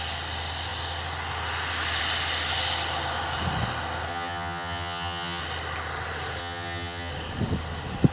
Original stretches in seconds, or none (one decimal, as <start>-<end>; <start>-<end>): 0.0-4.1; 5.4-6.4; 7.1-8.1